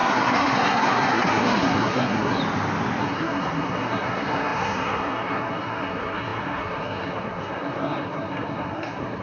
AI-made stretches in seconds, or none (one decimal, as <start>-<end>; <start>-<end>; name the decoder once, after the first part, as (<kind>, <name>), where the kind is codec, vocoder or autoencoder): 0.0-2.4 (codec, SNAC); 3.0-9.2